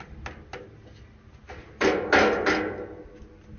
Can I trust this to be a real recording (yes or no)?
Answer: yes